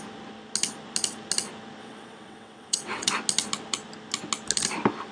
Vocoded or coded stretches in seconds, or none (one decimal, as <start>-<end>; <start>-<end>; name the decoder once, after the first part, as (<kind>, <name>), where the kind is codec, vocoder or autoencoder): 1.8-3.1 (vocoder, WaveNeXt)